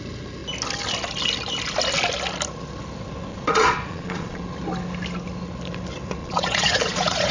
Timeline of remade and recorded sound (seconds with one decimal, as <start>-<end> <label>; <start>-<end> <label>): 0.0-3.3 recorded; 3.3-4.4 remade; 4.4-6.2 recorded; 6.2-7.3 remade